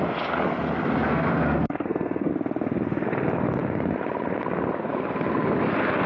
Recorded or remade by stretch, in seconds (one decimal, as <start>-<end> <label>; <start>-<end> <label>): 0.0-1.0 recorded; 1.0-2.3 remade; 2.3-6.1 recorded

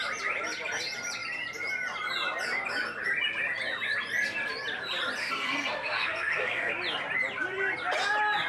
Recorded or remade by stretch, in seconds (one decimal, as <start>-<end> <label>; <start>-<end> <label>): 0.0-5.2 recorded; 5.2-6.7 remade; 6.7-8.5 recorded

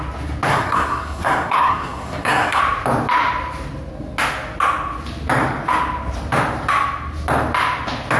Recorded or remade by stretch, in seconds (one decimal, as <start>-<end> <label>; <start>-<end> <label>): 0.0-0.5 recorded; 0.5-2.6 remade; 2.6-8.2 recorded

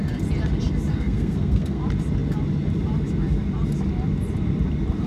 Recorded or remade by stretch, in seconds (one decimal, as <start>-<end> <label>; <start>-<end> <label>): 0.0-0.9 recorded; 0.9-1.8 remade; 1.8-5.1 recorded